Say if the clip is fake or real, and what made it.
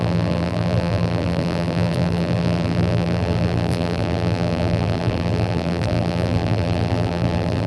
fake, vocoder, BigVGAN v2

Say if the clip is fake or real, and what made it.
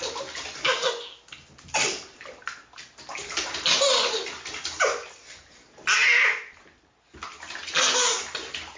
real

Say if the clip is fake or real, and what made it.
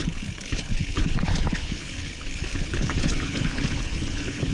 fake, codec, HILCodec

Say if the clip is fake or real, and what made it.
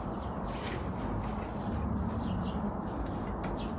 real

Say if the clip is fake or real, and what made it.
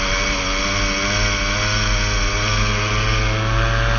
real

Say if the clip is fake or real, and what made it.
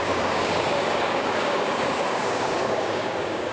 fake, codec, DAC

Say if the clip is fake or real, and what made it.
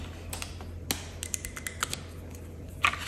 real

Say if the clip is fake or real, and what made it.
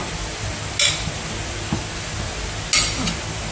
real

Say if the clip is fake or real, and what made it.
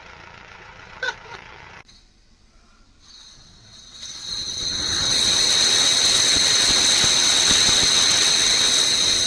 fake, vocoder, WaveNeXt